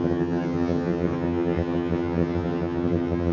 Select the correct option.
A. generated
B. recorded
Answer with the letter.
A